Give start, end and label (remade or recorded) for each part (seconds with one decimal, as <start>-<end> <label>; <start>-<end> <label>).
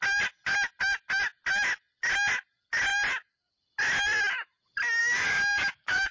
0.0-5.0 recorded; 5.0-6.1 remade